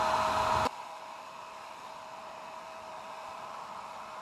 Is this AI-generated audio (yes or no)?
no